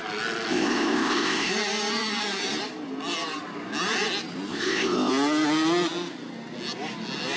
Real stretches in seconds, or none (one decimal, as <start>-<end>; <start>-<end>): 0.0-0.5; 1.5-4.5; 5.1-7.4